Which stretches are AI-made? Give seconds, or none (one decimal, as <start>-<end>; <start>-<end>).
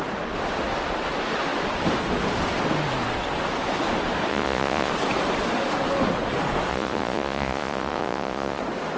4.3-4.9; 6.7-8.6